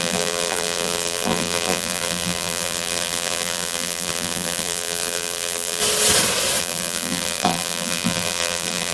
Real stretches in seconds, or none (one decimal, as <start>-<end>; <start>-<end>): 5.8-6.6